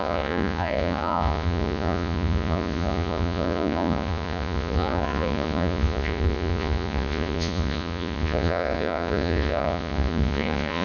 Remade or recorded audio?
remade